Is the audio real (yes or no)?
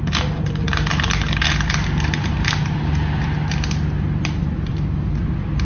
no